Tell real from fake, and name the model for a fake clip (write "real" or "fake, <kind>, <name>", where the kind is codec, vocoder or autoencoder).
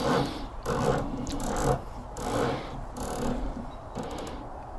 fake, vocoder, BigVGAN v2